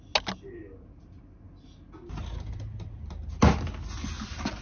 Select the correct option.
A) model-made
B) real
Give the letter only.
B